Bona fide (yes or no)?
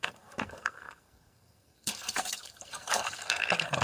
no